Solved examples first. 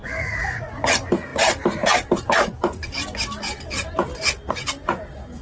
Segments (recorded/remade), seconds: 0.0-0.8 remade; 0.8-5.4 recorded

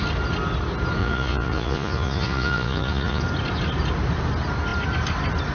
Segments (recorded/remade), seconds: 0.0-1.0 recorded; 1.0-3.2 remade; 3.2-5.5 recorded

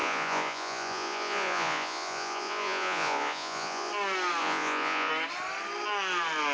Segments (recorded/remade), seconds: 0.0-3.9 remade; 3.9-4.4 recorded; 4.4-5.1 remade; 5.1-6.5 recorded

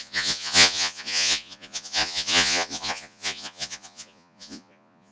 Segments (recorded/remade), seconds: 0.0-5.1 remade

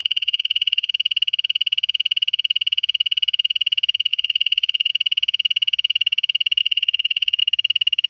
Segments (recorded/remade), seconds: 0.0-0.9 remade; 0.9-4.1 recorded; 4.1-4.9 remade; 4.9-6.6 recorded; 6.6-7.4 remade; 7.4-8.1 recorded